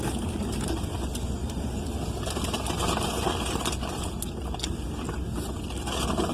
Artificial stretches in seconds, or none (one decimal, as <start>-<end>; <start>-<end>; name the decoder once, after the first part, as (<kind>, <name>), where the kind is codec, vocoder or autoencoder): 0.9-2.0 (vocoder, BigVGAN v2); 3.6-4.2